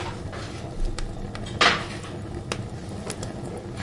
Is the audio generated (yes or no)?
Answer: no